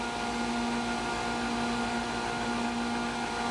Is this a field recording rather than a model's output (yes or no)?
yes